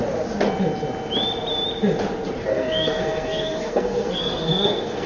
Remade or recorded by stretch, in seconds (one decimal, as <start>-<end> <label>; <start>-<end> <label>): 0.0-2.5 recorded; 2.5-5.1 remade